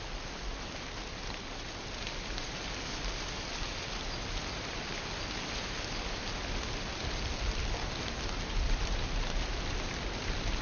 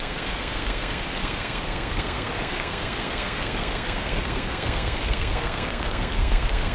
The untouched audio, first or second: first